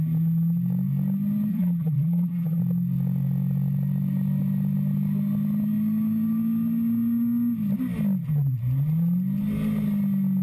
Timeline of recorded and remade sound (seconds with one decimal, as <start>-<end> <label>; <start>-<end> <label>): 0.0-1.5 recorded; 1.5-2.6 remade; 2.6-10.4 recorded